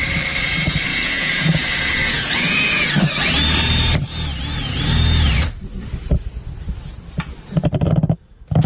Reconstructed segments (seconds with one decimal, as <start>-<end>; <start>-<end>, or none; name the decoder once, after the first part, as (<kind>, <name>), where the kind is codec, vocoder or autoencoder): 0.9-2.9 (vocoder, Vocos)